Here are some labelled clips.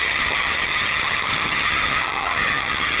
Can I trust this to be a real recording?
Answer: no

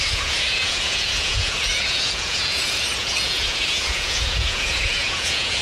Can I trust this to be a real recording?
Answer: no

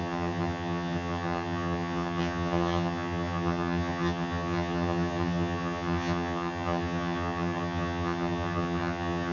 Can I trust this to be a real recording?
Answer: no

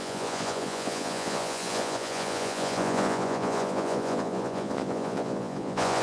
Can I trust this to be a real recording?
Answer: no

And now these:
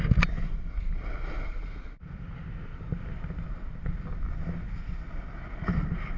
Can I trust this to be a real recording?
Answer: yes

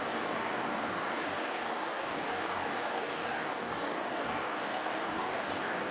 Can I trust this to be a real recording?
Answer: no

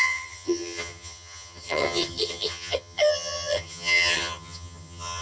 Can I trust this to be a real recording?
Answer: no